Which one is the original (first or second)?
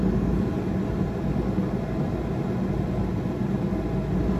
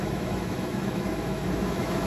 first